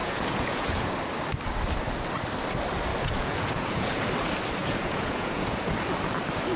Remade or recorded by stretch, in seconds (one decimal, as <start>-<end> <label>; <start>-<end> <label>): 0.0-0.9 remade; 0.9-2.9 recorded; 2.9-4.1 remade; 4.1-4.6 recorded; 4.6-5.7 remade; 5.7-6.6 recorded